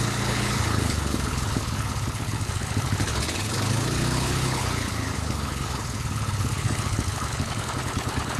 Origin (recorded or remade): remade